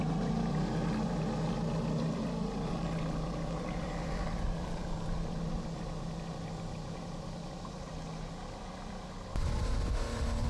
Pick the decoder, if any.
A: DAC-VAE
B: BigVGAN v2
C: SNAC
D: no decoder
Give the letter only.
D